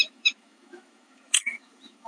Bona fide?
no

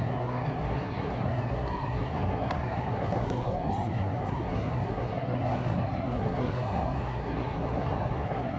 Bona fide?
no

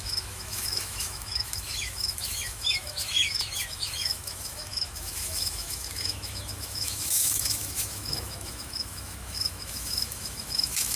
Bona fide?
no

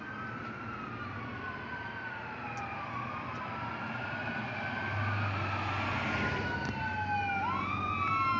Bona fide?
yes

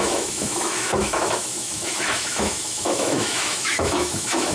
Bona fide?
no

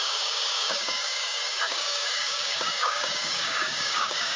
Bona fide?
no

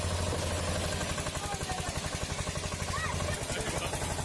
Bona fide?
yes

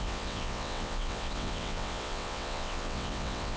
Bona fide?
no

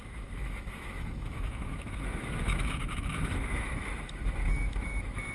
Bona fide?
no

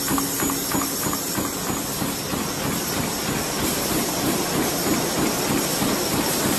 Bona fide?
yes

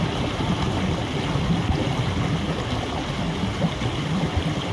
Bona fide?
yes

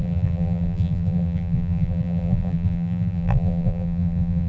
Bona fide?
no